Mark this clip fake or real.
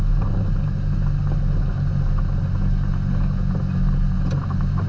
real